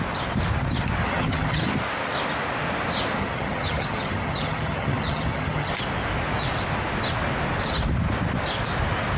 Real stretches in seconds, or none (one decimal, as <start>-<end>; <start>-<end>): 0.0-1.0; 1.6-3.2; 5.7-9.2